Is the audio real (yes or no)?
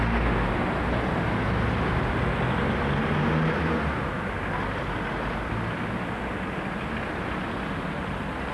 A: yes